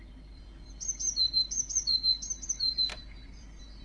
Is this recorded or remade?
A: remade